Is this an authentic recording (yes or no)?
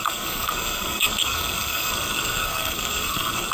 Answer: no